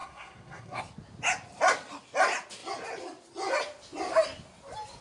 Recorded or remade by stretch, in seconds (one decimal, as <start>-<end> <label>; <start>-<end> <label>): 0.0-0.8 remade; 0.8-5.0 recorded